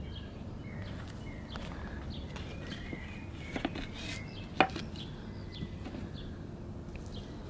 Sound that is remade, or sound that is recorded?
recorded